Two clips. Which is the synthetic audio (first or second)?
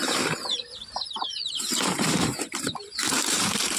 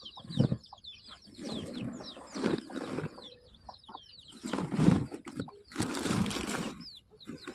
first